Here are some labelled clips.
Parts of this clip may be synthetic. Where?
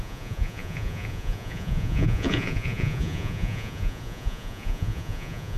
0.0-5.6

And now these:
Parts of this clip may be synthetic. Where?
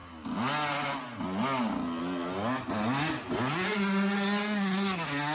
none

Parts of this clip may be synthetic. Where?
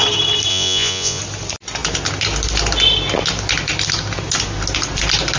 0.5-1.2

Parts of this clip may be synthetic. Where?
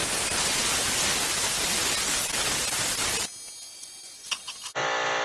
3.7-4.5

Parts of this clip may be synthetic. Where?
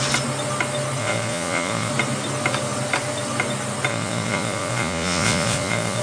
1.0-1.9; 3.9-6.0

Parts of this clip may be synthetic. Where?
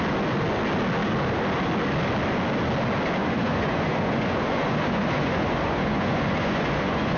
3.2-7.2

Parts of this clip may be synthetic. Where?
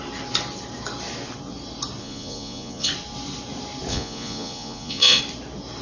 2.0-2.9; 3.9-5.2